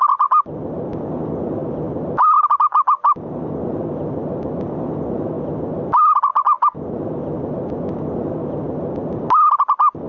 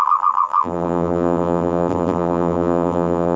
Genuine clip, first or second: first